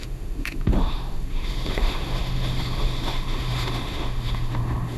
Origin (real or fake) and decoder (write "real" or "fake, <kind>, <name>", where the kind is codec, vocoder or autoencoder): fake, autoencoder, DAC-VAE